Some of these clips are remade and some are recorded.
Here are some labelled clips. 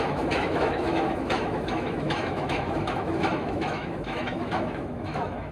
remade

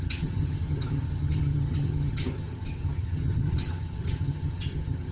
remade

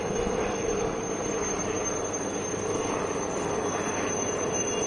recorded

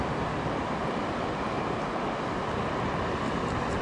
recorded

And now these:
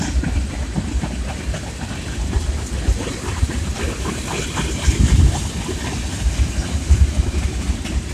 remade